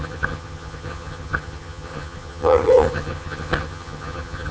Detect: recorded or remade remade